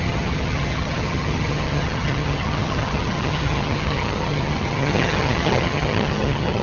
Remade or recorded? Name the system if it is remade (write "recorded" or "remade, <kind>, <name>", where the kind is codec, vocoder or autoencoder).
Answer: remade, vocoder, HiFi-GAN